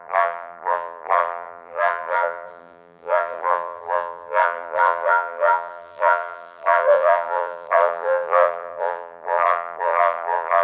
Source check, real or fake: fake